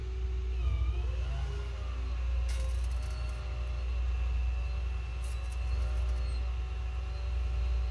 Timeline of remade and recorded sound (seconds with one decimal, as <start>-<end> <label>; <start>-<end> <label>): 0.0-7.9 recorded